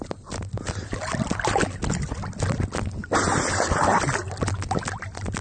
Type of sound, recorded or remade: recorded